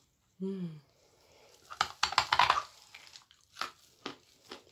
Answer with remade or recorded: recorded